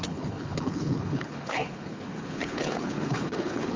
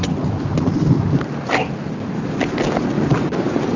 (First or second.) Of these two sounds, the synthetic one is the first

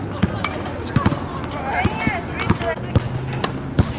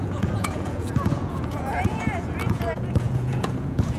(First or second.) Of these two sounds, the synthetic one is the second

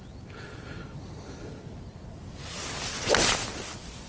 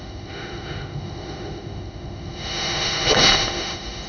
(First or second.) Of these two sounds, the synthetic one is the second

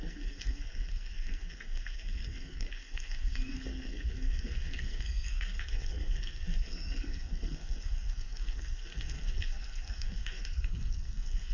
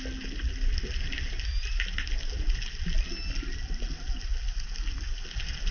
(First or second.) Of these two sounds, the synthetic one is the first